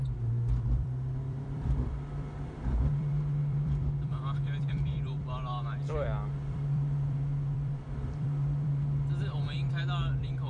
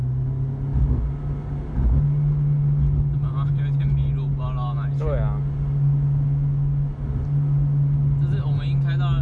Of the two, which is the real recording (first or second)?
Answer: second